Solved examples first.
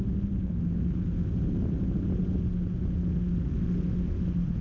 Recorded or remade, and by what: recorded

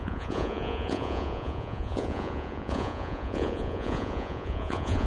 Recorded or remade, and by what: remade, vocoder, Vocos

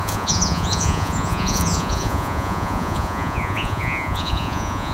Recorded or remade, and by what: remade, vocoder, Vocos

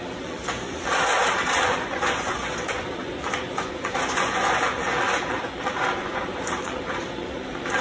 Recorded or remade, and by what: remade, vocoder, Vocos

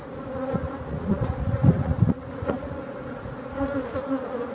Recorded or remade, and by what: remade, vocoder, Vocos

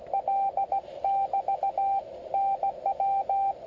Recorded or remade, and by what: recorded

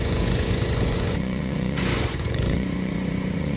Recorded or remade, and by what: remade, vocoder, Vocos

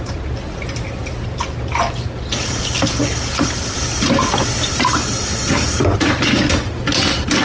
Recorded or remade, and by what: recorded